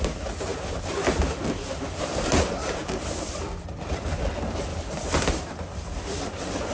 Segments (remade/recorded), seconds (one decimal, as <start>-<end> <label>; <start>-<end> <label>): 0.0-2.6 recorded; 2.6-3.3 remade; 3.3-4.7 recorded; 4.7-5.4 remade; 5.4-6.7 recorded